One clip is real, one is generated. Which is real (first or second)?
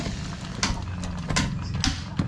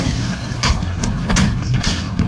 first